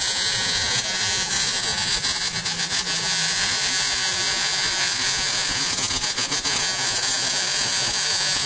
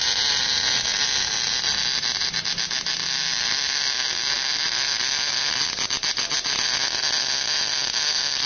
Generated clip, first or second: first